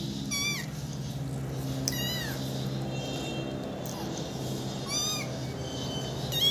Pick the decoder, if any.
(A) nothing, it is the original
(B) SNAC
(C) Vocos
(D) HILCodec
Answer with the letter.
A